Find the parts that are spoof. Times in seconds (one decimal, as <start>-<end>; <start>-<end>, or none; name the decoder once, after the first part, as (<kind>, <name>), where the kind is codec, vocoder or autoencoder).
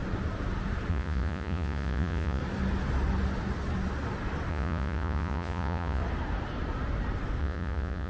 0.9-2.4 (vocoder, Vocos); 4.5-6.0; 7.4-8.1